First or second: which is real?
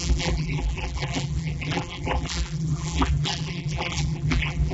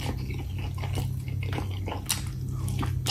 second